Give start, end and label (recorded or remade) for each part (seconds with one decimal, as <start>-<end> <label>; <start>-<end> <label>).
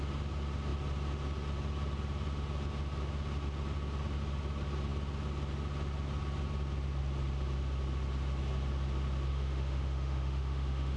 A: 0.0-9.3 recorded; 9.3-11.0 remade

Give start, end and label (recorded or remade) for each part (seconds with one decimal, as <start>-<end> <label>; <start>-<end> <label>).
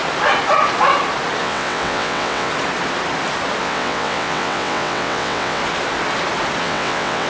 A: 0.0-1.4 recorded; 1.4-2.5 remade; 2.5-3.6 recorded; 3.6-5.6 remade; 5.6-6.6 recorded; 6.6-7.3 remade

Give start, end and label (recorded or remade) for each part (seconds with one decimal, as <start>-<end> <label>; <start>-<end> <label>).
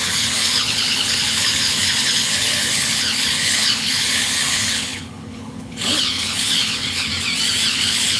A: 0.0-7.1 remade; 7.1-7.7 recorded; 7.7-8.2 remade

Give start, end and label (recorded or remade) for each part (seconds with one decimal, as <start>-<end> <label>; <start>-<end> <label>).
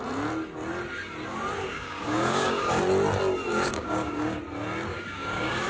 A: 0.0-1.7 recorded; 1.7-2.8 remade; 2.8-3.5 recorded; 3.5-4.4 remade; 4.4-4.9 recorded; 4.9-5.7 remade